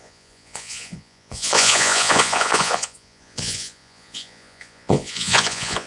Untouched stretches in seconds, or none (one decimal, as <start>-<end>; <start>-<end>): none